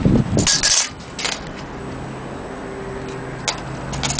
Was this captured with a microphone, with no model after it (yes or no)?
yes